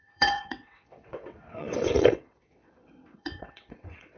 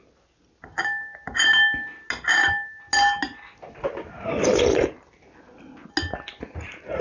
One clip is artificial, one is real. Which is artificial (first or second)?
first